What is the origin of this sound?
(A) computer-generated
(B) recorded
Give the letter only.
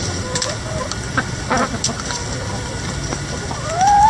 B